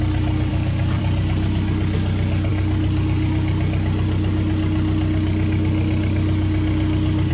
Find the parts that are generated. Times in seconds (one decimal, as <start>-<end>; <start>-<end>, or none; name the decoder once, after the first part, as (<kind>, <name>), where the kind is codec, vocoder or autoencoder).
0.5-1.0 (codec, DAC)